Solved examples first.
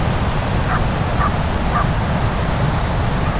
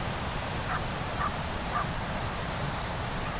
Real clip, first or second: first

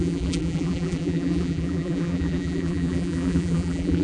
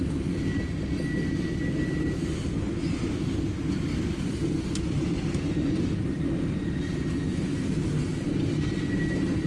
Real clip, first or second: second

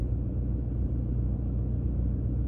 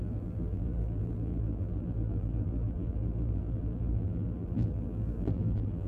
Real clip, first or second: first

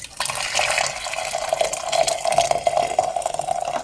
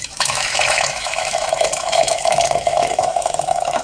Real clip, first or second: first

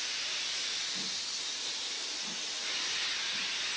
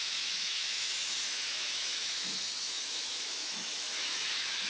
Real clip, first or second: first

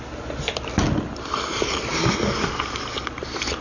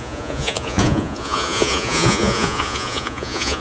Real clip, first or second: first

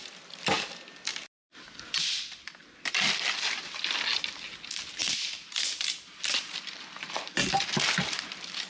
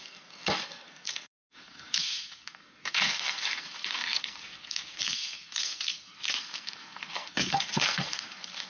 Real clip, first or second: first